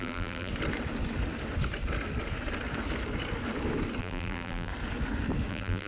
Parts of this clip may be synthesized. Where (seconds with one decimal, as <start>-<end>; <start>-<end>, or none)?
0.0-0.5; 4.0-4.7; 5.5-5.9